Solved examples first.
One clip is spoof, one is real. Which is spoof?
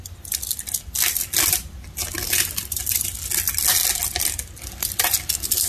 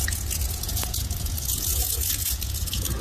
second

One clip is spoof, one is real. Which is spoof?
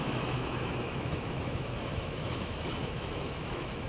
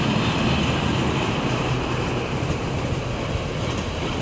first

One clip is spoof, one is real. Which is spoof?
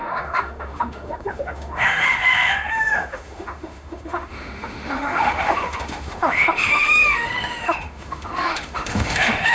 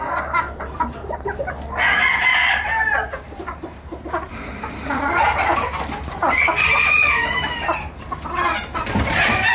first